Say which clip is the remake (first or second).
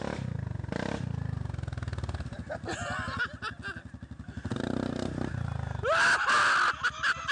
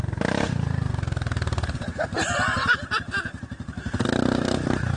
second